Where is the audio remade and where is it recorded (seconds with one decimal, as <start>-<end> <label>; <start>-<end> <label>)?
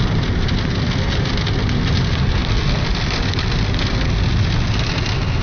0.0-5.4 recorded